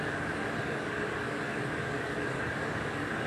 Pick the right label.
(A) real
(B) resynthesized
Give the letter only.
B